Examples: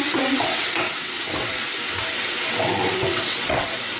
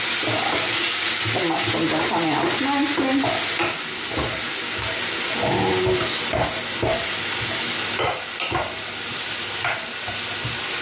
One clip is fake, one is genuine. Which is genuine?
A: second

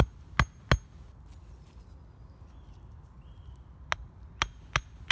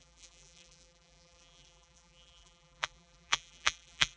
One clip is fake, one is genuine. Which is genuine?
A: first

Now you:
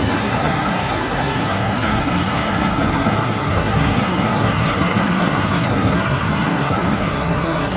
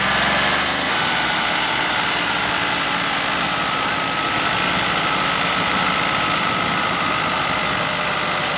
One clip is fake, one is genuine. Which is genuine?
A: second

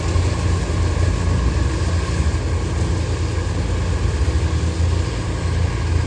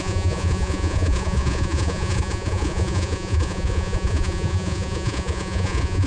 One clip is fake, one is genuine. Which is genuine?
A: first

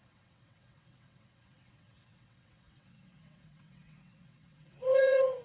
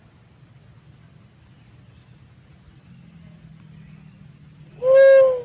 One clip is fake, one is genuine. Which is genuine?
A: second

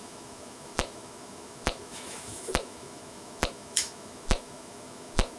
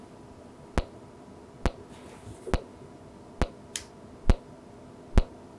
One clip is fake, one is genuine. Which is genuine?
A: second